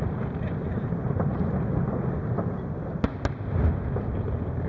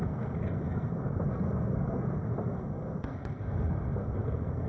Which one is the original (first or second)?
first